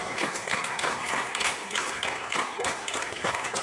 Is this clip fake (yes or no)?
yes